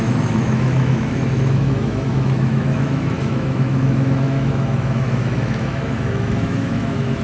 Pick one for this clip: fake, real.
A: fake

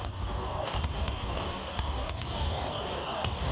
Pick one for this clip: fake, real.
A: fake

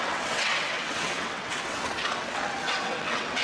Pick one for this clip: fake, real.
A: fake